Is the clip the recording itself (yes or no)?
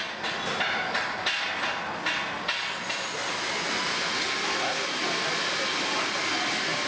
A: yes